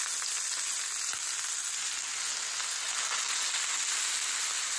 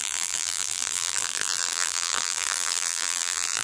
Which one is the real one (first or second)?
first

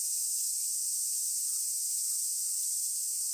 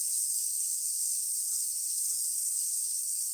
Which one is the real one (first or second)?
first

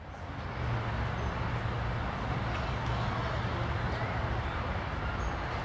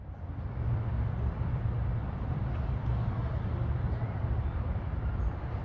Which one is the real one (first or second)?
first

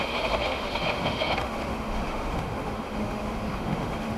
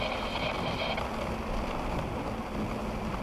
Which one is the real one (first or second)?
second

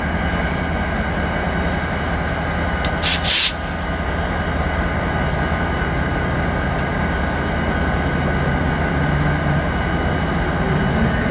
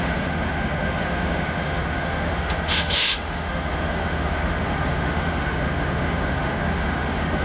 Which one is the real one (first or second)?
first